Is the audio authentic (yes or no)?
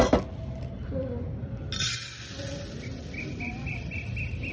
yes